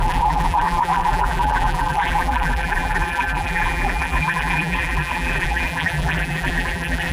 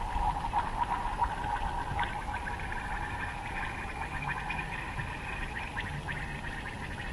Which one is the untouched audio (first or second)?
second